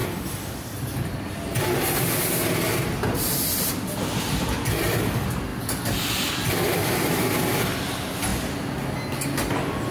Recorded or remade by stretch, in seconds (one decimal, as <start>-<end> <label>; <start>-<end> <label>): 0.0-5.5 recorded; 5.5-7.6 remade; 7.6-9.9 recorded